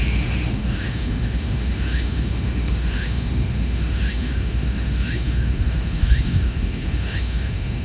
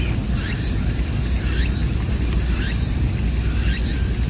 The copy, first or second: first